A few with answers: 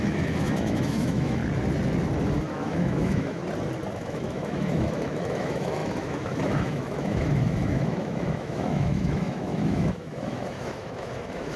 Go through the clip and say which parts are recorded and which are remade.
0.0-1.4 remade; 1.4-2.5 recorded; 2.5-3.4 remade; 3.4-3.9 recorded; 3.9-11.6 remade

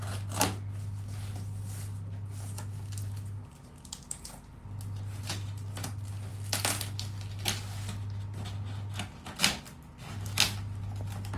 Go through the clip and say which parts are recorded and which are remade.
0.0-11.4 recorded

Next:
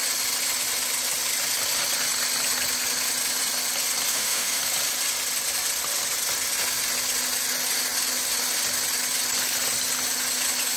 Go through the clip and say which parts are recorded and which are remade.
0.0-4.1 recorded; 4.1-4.6 remade; 4.6-10.8 recorded

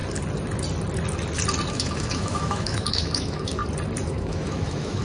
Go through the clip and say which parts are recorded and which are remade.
0.0-1.7 recorded; 1.7-3.6 remade; 3.6-4.1 recorded; 4.1-5.0 remade

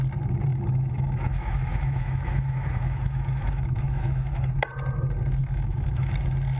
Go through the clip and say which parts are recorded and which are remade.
0.0-0.5 recorded; 0.5-4.5 remade; 4.5-5.4 recorded; 5.4-6.1 remade; 6.1-6.6 recorded

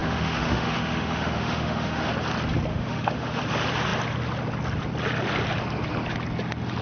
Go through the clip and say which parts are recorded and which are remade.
0.0-2.1 remade; 2.1-2.7 recorded; 2.7-3.4 remade; 3.4-6.8 recorded